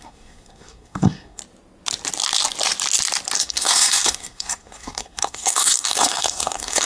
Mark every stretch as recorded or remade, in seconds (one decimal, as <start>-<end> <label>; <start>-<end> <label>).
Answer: 0.0-1.4 remade; 1.4-3.4 recorded; 3.4-6.8 remade